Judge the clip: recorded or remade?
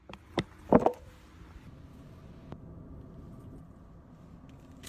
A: recorded